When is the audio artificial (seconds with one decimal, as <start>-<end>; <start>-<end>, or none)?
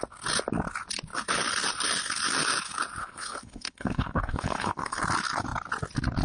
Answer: 3.0-5.0